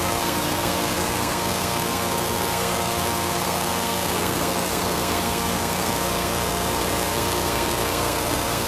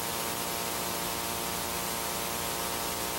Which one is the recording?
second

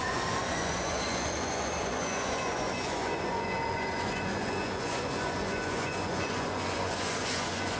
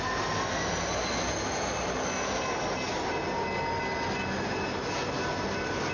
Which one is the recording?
second